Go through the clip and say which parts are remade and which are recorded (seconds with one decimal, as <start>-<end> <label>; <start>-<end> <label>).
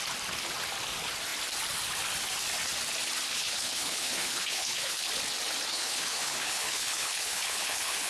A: 0.0-3.3 recorded; 3.3-5.1 remade; 5.1-5.7 recorded; 5.7-8.1 remade